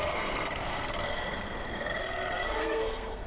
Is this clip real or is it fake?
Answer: fake